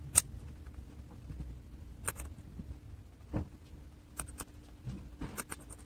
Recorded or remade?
recorded